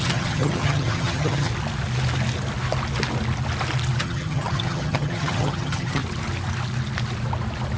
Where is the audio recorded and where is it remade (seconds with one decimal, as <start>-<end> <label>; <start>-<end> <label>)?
0.0-1.5 remade; 1.5-4.0 recorded; 4.0-6.0 remade; 6.0-7.8 recorded